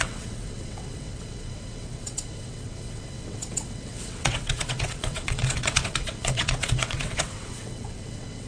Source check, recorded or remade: remade